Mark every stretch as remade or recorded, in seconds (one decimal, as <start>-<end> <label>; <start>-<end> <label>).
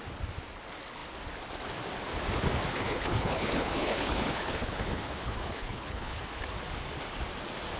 0.0-2.7 recorded; 2.7-6.2 remade; 6.2-7.8 recorded